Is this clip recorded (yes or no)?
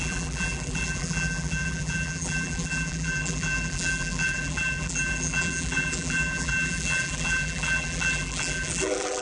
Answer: no